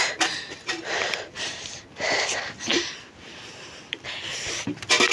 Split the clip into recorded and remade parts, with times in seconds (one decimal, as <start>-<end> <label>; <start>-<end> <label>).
0.0-2.3 remade; 2.3-5.1 recorded